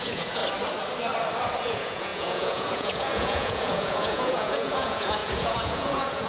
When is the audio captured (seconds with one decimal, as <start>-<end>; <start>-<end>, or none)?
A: 0.4-1.6